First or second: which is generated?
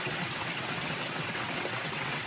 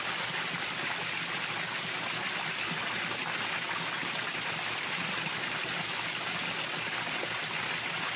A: first